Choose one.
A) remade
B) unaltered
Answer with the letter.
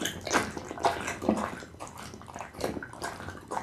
B